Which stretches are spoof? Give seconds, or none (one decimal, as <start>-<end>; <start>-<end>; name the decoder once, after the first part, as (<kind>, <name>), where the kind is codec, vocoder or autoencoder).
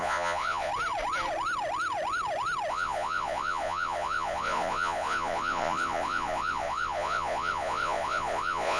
0.0-0.7 (vocoder, Vocos); 2.7-8.8